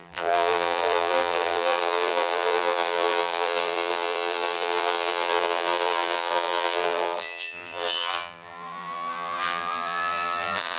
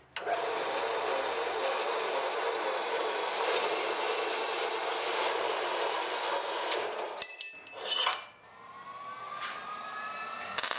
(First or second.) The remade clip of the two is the first